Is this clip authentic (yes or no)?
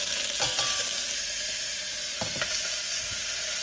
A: yes